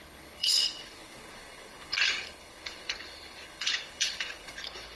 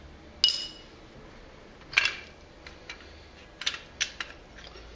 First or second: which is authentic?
second